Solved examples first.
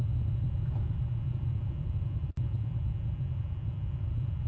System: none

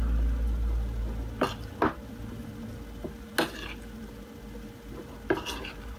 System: none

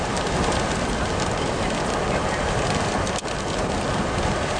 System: none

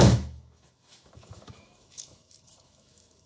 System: autoencoder, DAC-VAE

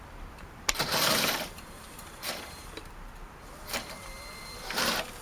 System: vocoder, BigVGAN v2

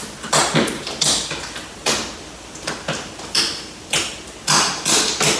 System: none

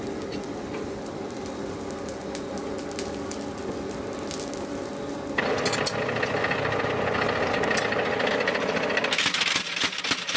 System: none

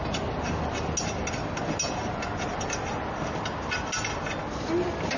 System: none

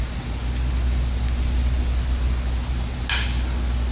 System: none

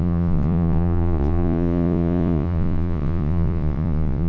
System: vocoder, Vocos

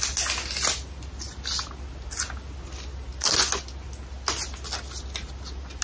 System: none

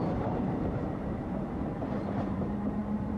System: vocoder, BigVGAN v2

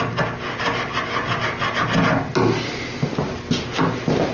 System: none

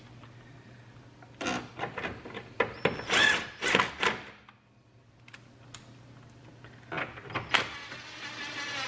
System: none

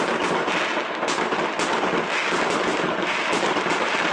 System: none